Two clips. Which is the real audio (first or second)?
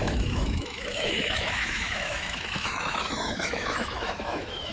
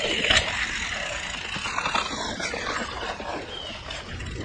second